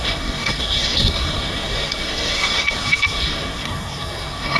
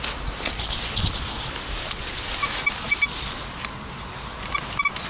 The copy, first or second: first